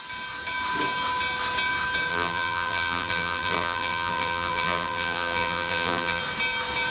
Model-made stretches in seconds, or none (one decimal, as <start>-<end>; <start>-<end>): 2.1-6.2